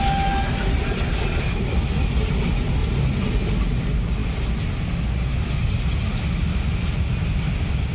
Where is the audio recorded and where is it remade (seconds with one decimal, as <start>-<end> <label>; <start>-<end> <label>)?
0.0-7.9 recorded